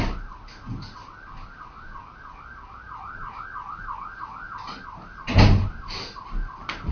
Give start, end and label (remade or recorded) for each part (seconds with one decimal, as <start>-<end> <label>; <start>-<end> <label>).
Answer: 0.0-6.9 recorded